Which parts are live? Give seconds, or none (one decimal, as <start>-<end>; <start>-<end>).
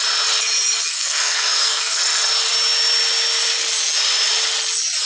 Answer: 0.0-0.9; 2.0-5.0